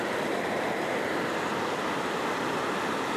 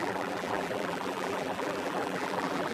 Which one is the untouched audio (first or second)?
first